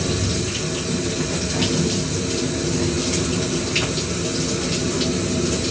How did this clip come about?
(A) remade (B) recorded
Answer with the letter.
B